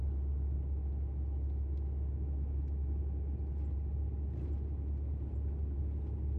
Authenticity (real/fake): real